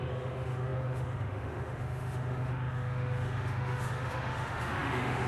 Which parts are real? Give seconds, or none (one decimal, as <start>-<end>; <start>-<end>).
none